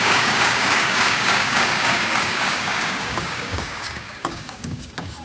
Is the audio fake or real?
fake